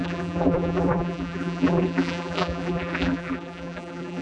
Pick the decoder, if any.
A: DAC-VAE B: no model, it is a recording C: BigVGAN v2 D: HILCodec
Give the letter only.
C